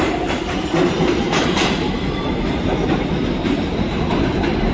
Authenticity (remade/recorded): remade